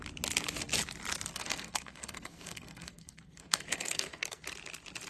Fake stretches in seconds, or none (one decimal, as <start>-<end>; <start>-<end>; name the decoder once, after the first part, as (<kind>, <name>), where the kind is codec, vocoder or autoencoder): 1.3-4.4 (codec, SNAC)